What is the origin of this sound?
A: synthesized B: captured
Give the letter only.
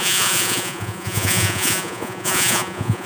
A